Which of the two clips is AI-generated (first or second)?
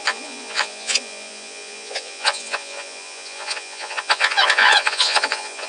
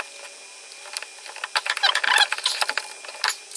first